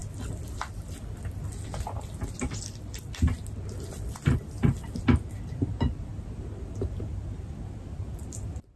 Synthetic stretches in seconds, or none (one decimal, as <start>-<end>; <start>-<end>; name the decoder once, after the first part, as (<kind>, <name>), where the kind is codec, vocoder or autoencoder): none